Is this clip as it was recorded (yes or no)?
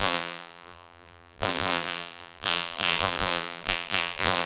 no